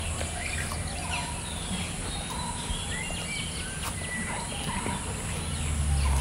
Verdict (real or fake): real